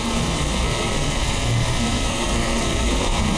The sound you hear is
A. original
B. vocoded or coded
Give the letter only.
B